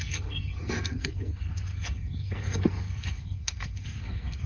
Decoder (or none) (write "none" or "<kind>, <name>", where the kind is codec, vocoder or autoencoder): codec, SNAC